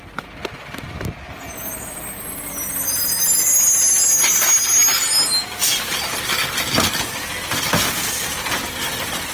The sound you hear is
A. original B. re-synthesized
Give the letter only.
A